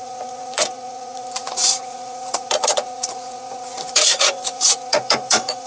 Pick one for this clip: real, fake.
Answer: fake